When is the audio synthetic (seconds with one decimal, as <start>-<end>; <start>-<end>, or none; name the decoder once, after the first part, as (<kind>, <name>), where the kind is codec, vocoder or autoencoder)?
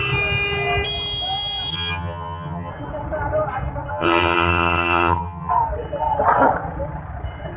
1.7-2.7 (vocoder, HiFi-GAN); 3.9-5.5